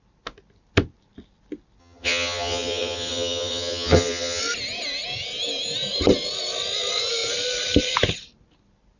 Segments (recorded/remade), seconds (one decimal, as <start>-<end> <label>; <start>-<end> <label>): 0.0-1.8 recorded; 1.8-4.4 remade; 4.4-9.0 recorded